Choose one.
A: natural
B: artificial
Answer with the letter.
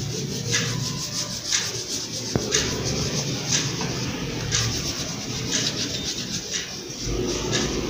A